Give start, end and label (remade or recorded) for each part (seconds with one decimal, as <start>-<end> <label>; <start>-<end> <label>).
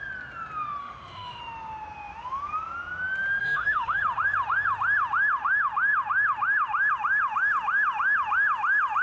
0.0-0.8 recorded; 0.8-1.4 remade; 1.4-3.4 recorded; 3.4-4.0 remade; 4.0-9.0 recorded